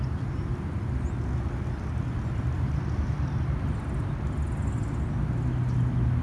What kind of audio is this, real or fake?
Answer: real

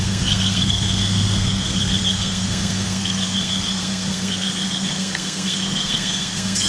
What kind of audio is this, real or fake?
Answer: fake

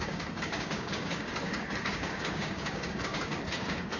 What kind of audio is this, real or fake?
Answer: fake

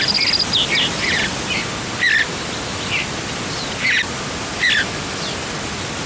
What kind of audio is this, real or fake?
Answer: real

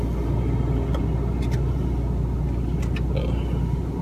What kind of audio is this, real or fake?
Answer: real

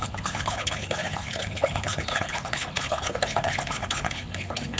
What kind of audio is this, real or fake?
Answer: fake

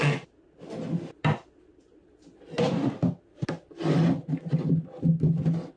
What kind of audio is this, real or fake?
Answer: real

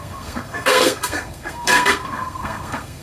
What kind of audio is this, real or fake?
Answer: fake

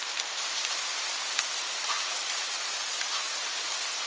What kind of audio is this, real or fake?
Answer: fake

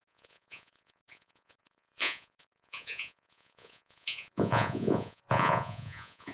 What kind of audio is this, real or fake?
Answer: fake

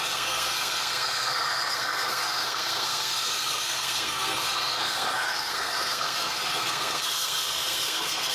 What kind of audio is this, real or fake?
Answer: fake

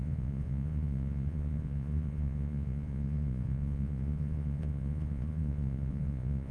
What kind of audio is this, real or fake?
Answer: fake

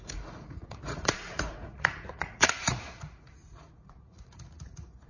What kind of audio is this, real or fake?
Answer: fake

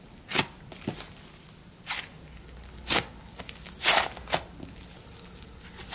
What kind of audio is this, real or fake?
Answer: real